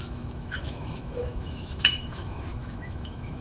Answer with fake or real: fake